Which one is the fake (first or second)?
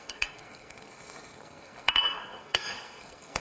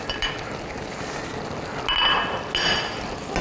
first